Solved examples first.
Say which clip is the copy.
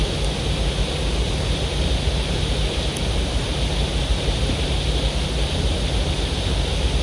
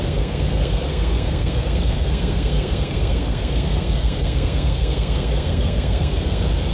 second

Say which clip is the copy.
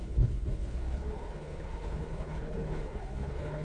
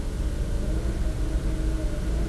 first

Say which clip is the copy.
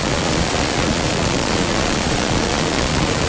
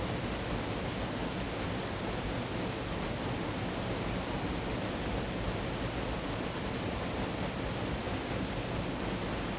first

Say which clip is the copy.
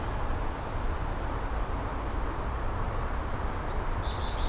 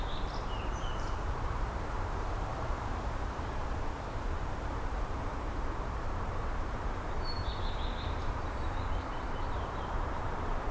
second